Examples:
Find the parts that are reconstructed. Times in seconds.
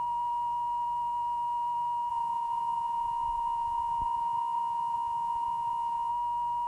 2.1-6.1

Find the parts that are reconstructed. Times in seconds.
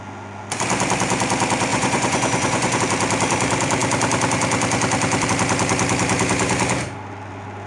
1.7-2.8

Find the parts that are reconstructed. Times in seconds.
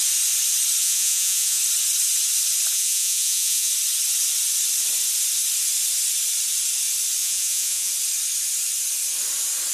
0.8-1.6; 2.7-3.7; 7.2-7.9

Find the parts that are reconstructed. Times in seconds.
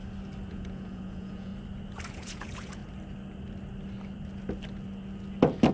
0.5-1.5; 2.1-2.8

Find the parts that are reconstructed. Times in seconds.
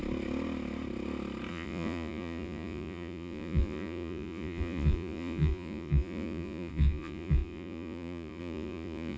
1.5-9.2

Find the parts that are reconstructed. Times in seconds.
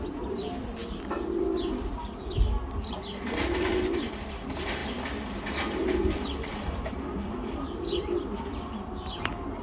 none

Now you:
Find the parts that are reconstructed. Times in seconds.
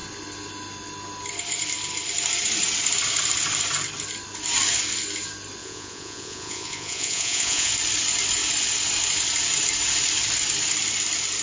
5.6-7.7